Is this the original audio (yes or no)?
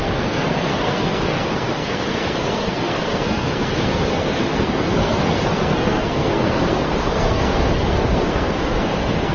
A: no